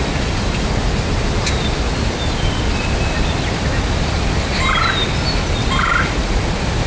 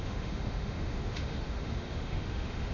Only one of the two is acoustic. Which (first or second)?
first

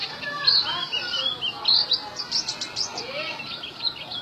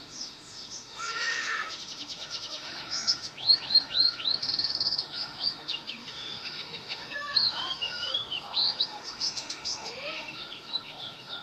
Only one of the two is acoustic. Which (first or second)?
first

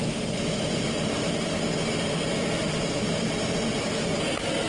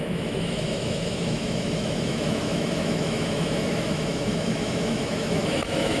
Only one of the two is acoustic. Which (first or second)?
first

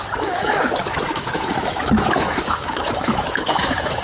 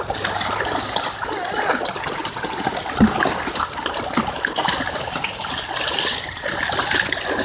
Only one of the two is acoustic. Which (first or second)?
second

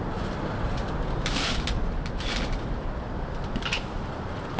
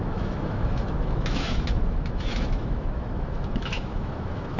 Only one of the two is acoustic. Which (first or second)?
first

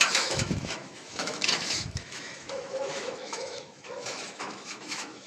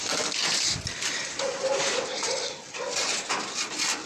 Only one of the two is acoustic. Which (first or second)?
second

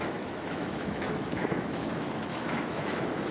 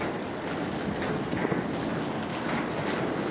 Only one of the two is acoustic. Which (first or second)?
second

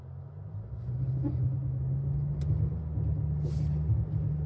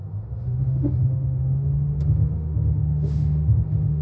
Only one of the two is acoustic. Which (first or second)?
first